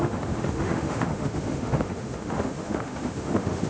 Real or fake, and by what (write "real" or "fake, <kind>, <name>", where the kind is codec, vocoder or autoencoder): fake, autoencoder, DAC-VAE